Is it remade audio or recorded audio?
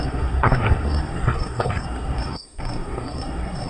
remade